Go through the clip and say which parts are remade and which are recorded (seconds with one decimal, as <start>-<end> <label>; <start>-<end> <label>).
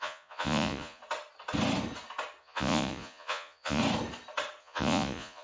0.0-1.0 remade; 1.0-2.4 recorded; 2.4-3.8 remade; 3.8-4.6 recorded; 4.6-5.4 remade